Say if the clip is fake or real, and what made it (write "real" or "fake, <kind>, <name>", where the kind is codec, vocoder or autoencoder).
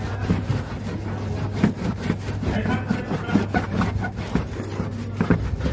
real